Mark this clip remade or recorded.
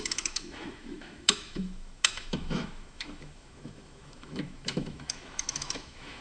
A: remade